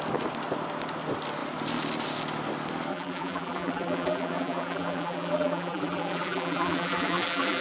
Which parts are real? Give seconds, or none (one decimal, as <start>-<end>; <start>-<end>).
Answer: 0.0-2.9